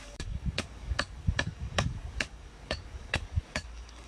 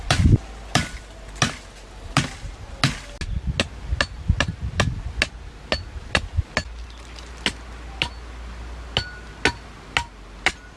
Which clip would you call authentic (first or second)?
second